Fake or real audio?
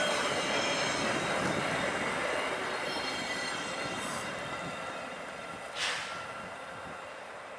real